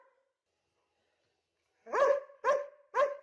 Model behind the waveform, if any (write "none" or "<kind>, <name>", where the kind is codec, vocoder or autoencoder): none